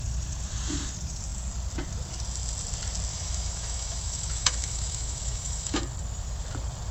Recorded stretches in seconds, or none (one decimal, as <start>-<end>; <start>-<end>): 0.0-3.1; 5.8-6.9